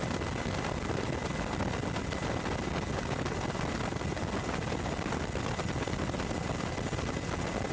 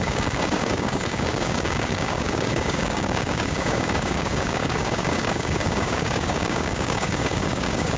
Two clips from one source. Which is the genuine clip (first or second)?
first